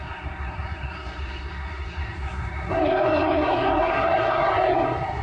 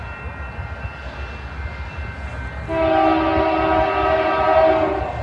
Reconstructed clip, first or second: first